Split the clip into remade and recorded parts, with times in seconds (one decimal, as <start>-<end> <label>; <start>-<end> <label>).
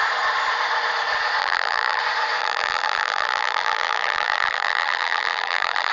0.0-1.4 recorded; 1.4-2.0 remade; 2.0-2.4 recorded; 2.4-5.9 remade